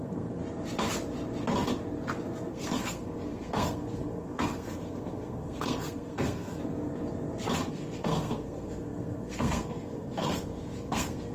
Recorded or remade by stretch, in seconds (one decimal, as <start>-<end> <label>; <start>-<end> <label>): 0.0-0.4 remade; 0.4-2.5 recorded; 2.5-6.6 remade; 6.6-7.7 recorded; 7.7-11.3 remade